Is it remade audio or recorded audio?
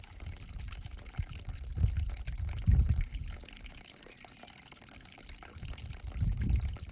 recorded